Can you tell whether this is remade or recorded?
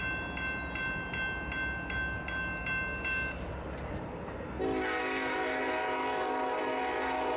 recorded